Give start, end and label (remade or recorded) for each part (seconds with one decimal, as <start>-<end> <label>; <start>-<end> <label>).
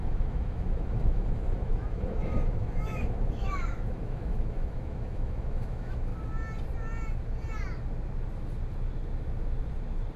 0.0-6.1 remade; 6.1-10.2 recorded